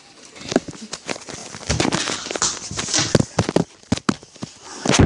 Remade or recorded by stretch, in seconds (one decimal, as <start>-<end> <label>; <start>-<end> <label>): 0.0-5.1 recorded